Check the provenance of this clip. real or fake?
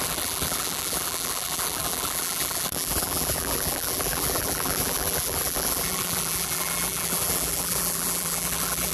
fake